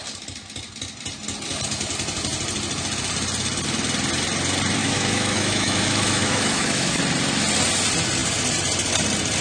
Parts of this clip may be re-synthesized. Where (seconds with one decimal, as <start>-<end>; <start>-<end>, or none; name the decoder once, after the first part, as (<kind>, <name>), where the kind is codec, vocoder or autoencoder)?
4.8-7.0 (autoencoder, DAC-VAE)

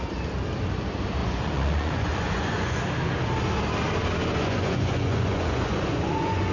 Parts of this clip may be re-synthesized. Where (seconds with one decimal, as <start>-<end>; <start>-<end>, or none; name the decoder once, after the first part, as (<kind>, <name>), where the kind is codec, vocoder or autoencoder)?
1.2-2.8 (vocoder, Vocos); 4.4-6.5